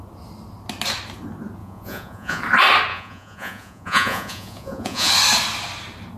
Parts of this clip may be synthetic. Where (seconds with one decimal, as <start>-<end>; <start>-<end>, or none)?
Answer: 1.6-2.4; 2.9-5.1